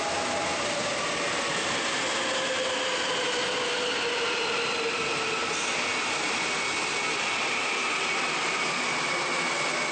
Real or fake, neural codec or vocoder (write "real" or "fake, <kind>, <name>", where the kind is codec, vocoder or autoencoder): real